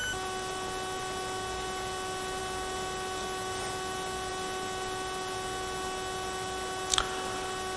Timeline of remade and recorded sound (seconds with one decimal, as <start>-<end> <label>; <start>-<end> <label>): 0.0-7.8 recorded